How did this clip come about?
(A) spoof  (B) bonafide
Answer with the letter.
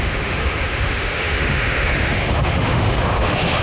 A